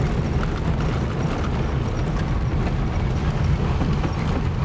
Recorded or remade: recorded